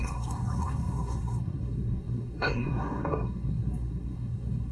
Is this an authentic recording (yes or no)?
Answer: no